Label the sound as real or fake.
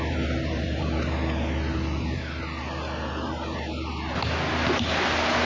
real